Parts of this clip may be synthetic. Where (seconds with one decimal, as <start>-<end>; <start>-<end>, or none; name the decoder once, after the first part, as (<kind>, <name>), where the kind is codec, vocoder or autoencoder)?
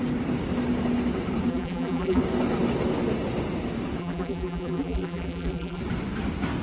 1.5-2.2 (vocoder, BigVGAN v2); 4.0-5.8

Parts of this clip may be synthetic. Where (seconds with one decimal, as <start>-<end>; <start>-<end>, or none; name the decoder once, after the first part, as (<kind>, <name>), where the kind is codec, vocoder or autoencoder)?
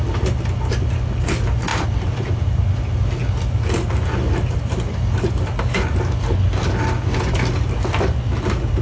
1.7-2.4 (vocoder, BigVGAN v2)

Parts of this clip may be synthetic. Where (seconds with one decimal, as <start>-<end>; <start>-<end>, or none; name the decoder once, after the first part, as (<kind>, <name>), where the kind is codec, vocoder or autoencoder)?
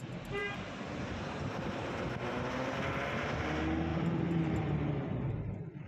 0.4-1.9 (vocoder, BigVGAN v2); 3.9-4.9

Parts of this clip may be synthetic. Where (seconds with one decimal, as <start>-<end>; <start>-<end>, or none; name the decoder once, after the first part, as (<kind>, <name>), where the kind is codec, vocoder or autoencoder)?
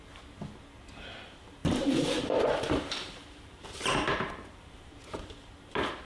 1.6-4.9 (vocoder, BigVGAN v2)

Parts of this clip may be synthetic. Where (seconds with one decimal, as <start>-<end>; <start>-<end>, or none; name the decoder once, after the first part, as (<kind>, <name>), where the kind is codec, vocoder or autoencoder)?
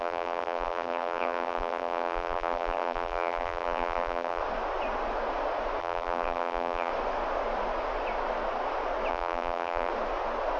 0.0-4.4 (vocoder, BigVGAN v2); 5.8-6.9; 9.1-9.9